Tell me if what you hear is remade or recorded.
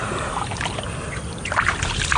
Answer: remade